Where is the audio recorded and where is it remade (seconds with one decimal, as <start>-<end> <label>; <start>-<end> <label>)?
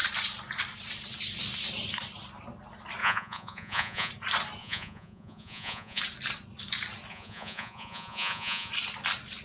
0.0-3.0 recorded; 3.0-4.1 remade; 4.1-4.6 recorded; 4.6-6.0 remade; 6.0-7.1 recorded; 7.1-8.7 remade; 8.7-9.4 recorded